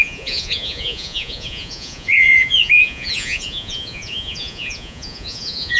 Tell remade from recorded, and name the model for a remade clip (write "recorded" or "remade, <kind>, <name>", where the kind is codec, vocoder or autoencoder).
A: remade, vocoder, Vocos